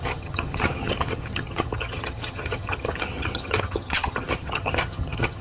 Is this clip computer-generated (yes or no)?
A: yes